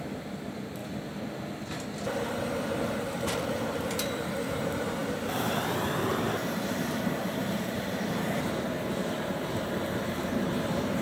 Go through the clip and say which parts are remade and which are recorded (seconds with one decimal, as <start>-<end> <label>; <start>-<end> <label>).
0.0-0.8 remade; 0.8-2.1 recorded; 2.1-11.0 remade